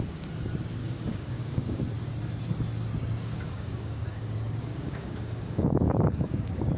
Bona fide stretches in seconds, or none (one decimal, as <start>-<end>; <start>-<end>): 0.0-0.8; 1.8-2.9